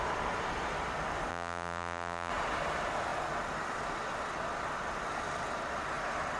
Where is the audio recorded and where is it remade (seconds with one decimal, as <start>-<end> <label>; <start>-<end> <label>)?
0.0-1.3 recorded; 1.3-2.3 remade; 2.3-6.4 recorded